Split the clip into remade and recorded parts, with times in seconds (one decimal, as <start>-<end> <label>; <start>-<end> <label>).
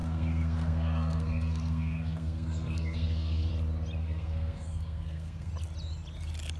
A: 0.0-3.5 remade; 3.5-4.0 recorded; 4.0-5.5 remade; 5.5-6.6 recorded